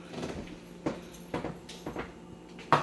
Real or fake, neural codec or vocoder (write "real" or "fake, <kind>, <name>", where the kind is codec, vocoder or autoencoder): real